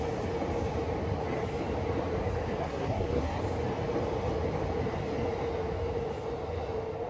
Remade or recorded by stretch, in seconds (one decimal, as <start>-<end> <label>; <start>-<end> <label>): 0.0-2.6 recorded; 2.6-3.4 remade; 3.4-7.1 recorded